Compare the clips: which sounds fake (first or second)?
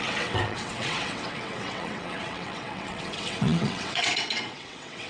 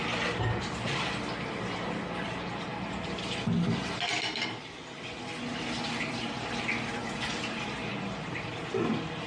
first